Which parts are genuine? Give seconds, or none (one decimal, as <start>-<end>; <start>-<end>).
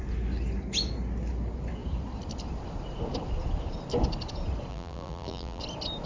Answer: 0.0-4.7; 5.6-6.1